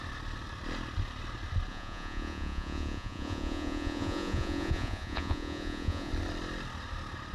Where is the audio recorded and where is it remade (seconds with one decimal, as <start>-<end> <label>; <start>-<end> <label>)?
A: 0.0-1.7 recorded; 1.7-6.1 remade; 6.1-7.3 recorded